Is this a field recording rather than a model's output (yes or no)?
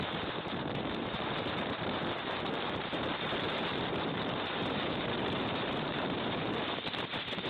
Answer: no